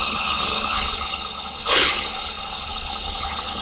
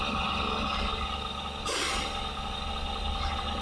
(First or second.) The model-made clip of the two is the first